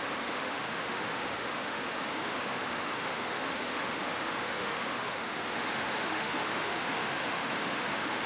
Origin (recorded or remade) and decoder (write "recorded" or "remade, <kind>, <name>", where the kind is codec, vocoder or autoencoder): remade, autoencoder, DAC-VAE